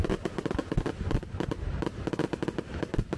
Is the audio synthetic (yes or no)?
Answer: no